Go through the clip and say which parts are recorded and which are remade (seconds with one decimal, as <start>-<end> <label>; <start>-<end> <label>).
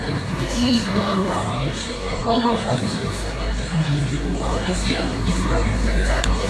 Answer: 0.0-6.5 remade